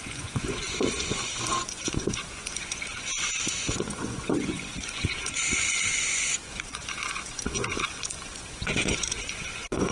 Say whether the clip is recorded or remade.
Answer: remade